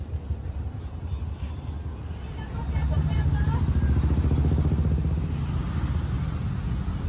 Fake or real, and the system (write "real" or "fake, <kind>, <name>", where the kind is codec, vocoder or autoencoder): real